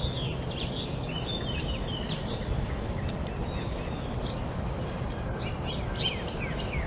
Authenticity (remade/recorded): recorded